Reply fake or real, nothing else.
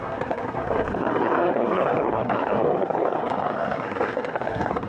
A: fake